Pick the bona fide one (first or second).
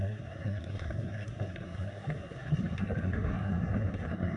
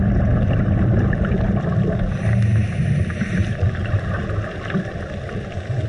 second